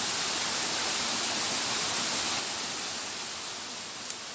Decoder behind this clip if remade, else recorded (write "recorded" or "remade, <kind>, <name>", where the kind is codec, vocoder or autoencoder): recorded